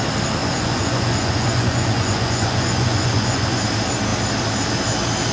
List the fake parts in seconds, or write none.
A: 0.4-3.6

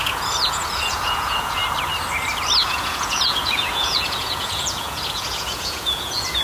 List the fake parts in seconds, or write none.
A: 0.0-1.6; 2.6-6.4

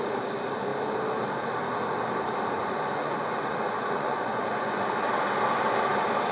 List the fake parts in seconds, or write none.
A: 2.6-4.9

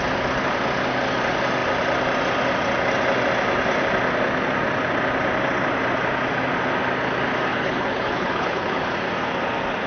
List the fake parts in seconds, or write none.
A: 7.5-8.8